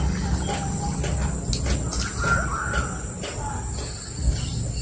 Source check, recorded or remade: recorded